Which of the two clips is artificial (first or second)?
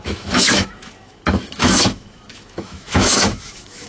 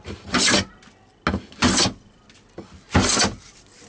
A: first